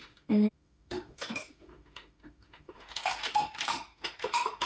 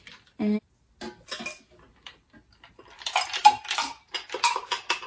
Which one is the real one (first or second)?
second